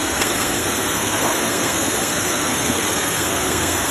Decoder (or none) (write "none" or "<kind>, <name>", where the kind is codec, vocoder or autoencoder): codec, SNAC